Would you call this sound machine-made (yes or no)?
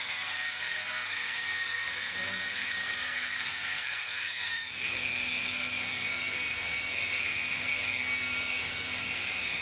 yes